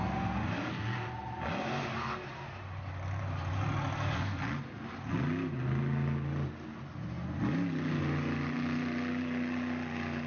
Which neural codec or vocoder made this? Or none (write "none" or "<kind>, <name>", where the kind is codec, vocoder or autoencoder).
none